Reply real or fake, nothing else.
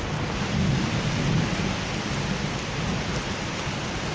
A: real